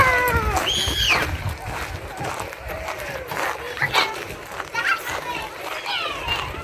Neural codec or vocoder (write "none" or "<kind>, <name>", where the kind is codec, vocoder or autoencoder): none